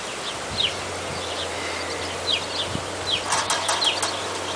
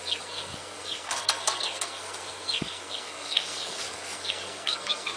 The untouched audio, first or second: first